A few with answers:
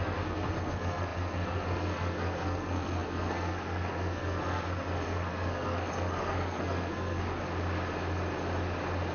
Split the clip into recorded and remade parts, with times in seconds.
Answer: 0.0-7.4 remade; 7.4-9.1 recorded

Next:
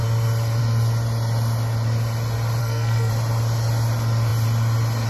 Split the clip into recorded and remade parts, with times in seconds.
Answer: 0.0-2.6 recorded; 2.6-3.1 remade; 3.1-5.1 recorded

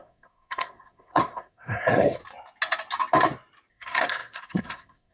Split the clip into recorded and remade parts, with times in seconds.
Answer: 0.0-2.2 remade; 2.2-3.7 recorded; 3.7-5.1 remade

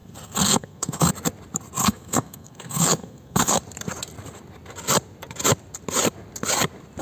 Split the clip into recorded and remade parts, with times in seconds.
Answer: 0.0-1.1 remade; 1.1-1.8 recorded; 1.8-3.6 remade; 3.6-7.0 recorded

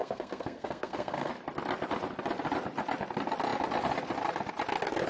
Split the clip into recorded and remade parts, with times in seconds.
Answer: 0.0-1.3 remade; 1.3-5.1 recorded

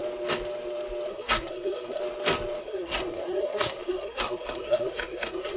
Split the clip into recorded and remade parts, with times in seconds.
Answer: 0.0-1.1 recorded; 1.1-2.0 remade; 2.0-2.6 recorded; 2.6-5.6 remade

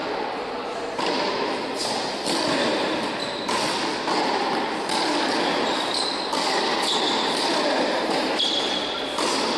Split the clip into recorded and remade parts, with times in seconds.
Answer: 0.0-9.6 recorded

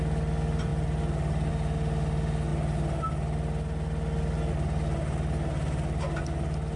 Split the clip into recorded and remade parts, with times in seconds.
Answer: 0.0-6.8 recorded